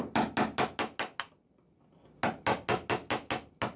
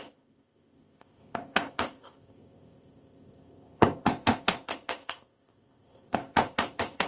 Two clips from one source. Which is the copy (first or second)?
second